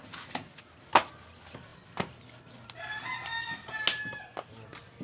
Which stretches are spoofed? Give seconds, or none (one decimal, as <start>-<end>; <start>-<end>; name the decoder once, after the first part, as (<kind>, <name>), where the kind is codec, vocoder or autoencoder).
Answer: none